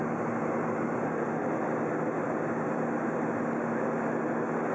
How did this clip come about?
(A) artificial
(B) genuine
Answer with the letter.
B